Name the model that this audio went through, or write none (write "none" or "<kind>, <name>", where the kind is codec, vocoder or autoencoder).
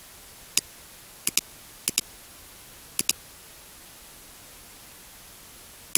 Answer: none